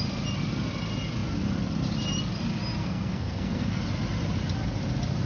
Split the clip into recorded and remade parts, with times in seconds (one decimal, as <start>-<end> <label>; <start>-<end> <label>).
0.0-2.8 recorded; 2.8-3.8 remade; 3.8-5.3 recorded